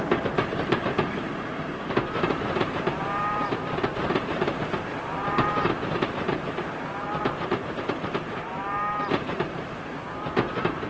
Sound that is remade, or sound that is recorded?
remade